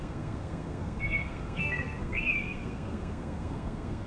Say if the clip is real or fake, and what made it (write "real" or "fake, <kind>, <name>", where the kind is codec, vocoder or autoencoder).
fake, codec, SNAC